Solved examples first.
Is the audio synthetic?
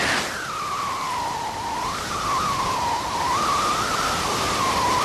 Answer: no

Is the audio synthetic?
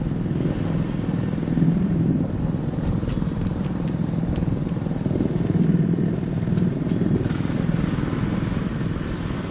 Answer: yes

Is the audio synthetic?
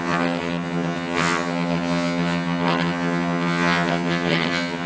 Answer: yes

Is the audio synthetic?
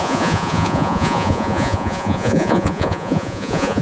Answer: yes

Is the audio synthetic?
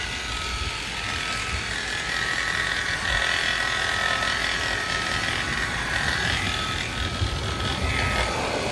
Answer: no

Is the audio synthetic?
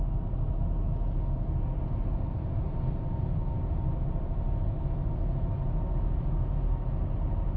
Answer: no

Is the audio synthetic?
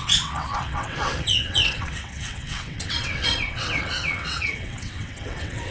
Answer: yes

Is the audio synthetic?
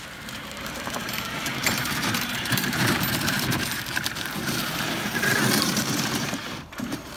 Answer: yes